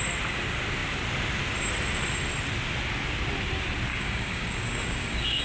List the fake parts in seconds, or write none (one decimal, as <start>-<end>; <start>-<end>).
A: 3.9-5.4

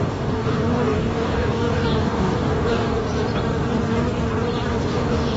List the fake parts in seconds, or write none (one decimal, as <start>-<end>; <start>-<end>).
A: 0.0-3.1; 4.7-5.4

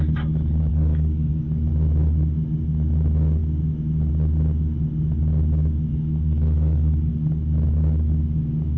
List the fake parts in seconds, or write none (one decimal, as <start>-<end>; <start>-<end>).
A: 0.7-1.7; 5.9-7.1